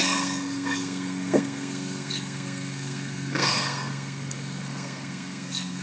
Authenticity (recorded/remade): remade